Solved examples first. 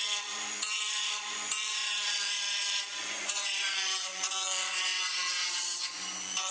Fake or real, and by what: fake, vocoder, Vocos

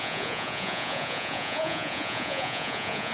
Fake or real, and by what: fake, vocoder, Vocos